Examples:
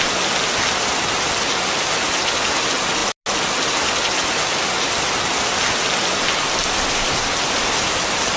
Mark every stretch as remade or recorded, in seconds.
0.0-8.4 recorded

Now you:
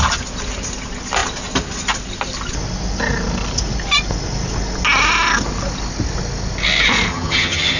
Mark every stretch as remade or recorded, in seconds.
0.0-7.1 recorded; 7.1-7.8 remade

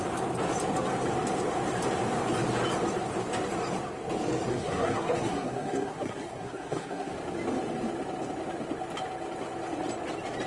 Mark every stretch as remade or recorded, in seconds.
0.0-4.5 recorded; 4.5-7.1 remade; 7.1-10.5 recorded

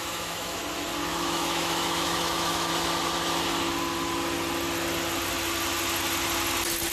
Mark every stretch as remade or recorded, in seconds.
0.0-0.6 remade; 0.6-1.1 recorded; 1.1-2.7 remade; 2.7-6.9 recorded

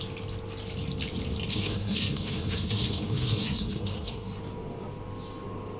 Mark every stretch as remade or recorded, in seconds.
0.0-1.5 recorded; 1.5-4.4 remade; 4.4-5.8 recorded

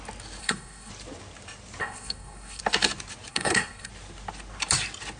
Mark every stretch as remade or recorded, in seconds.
0.0-0.4 recorded; 0.4-0.9 remade; 0.9-1.8 recorded; 1.8-2.6 remade; 2.6-3.3 recorded; 3.3-3.9 remade; 3.9-5.2 recorded